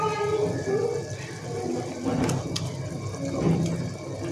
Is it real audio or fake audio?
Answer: real